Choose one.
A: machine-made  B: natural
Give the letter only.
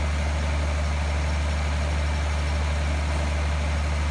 B